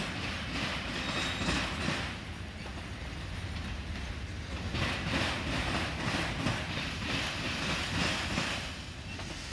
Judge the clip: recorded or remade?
recorded